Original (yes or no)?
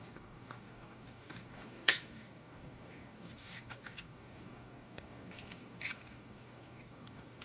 no